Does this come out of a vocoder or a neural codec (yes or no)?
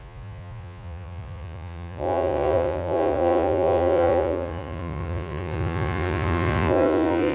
yes